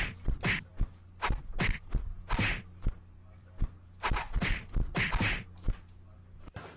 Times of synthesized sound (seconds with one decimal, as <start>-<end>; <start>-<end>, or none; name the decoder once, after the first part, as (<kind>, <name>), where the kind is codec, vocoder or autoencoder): none